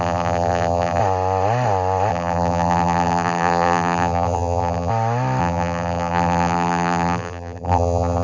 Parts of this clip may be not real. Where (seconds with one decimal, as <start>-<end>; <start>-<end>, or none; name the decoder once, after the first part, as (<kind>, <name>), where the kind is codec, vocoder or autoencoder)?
0.0-1.0 (vocoder, BigVGAN v2); 2.1-4.9; 5.4-8.2